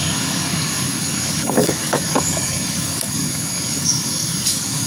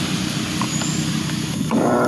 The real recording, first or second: second